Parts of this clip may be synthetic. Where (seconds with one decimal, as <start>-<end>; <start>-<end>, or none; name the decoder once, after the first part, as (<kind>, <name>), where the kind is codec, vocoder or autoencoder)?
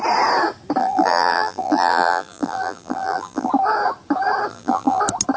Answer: 0.8-3.5 (vocoder, BigVGAN v2); 4.5-5.0